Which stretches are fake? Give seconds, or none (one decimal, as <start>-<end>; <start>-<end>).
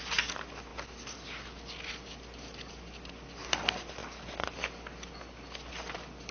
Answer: none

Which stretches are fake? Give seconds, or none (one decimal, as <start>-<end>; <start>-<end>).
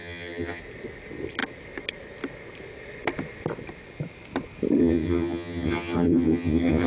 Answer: 0.0-0.6; 4.8-6.9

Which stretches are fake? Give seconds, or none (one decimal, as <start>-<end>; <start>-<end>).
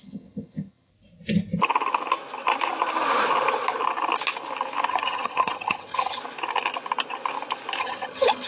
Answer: 0.0-0.9; 4.9-6.2; 7.8-8.5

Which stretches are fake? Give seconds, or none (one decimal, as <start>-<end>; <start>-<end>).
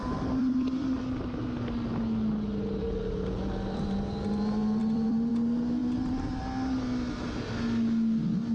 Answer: 0.0-1.0; 4.8-5.3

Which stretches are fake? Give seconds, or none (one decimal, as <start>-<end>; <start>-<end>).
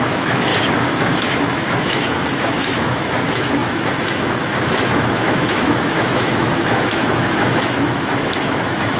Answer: 0.0-0.5; 1.0-9.0